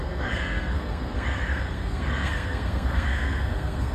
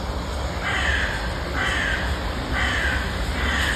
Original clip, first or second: second